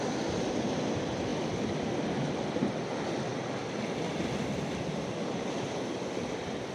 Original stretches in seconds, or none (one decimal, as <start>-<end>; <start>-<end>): 0.0-1.3; 2.8-6.7